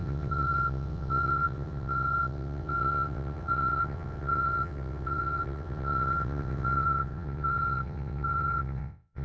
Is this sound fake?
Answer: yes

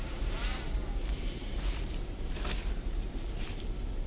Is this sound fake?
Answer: yes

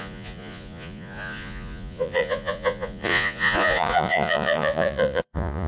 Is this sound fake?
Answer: yes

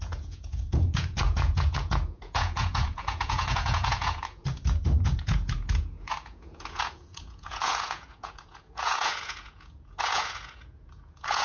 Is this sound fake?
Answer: yes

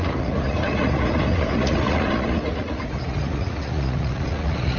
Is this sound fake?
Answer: yes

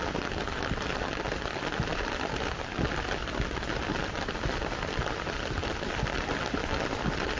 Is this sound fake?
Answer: no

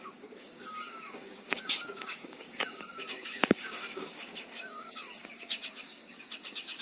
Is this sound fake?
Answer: yes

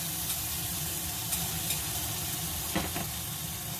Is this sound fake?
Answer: no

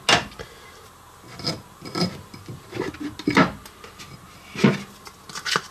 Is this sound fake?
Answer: no